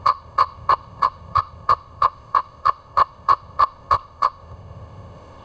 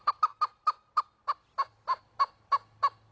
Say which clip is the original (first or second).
second